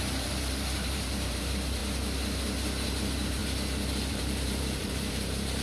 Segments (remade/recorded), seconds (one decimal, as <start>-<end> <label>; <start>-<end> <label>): 0.0-1.8 remade; 1.8-2.9 recorded; 2.9-3.4 remade; 3.4-4.1 recorded; 4.1-5.6 remade